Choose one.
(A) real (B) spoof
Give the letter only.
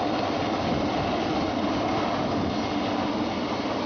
A